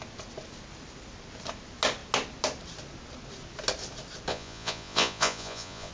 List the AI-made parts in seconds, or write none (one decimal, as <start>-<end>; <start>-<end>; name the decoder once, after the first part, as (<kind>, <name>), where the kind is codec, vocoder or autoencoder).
4.3-5.9 (vocoder, Vocos)